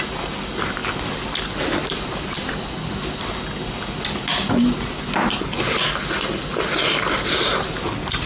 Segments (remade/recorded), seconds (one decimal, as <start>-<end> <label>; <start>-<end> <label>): 0.0-8.3 recorded